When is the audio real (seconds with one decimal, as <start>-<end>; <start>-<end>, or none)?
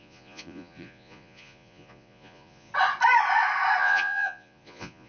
2.7-3.8